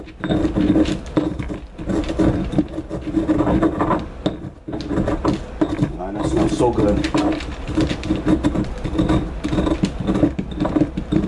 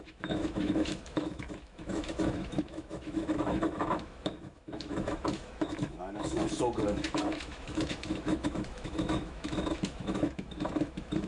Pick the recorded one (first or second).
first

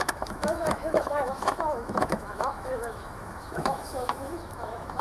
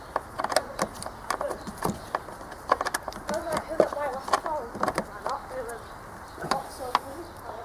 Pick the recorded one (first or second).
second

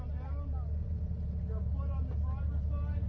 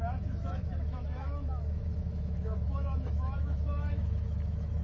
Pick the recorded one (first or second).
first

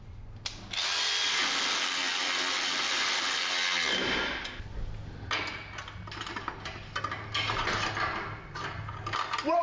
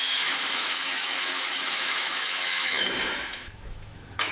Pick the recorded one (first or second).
first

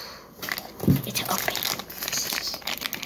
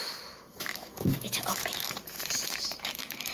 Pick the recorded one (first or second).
first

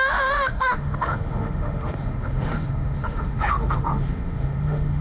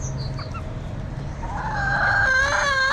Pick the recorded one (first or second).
second